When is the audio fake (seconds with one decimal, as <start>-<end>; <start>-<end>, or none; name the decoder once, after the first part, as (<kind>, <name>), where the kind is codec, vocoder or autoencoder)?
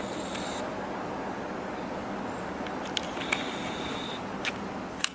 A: none